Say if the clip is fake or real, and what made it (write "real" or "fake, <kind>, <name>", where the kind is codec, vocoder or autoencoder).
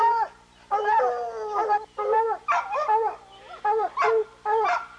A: real